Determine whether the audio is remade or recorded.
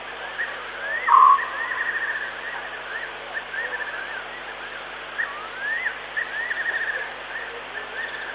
recorded